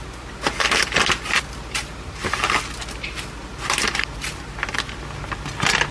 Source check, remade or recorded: recorded